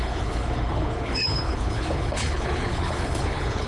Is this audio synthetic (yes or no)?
yes